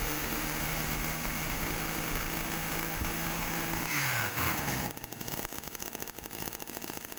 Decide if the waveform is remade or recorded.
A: remade